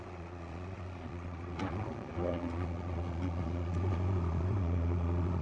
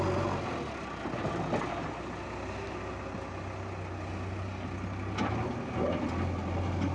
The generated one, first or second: first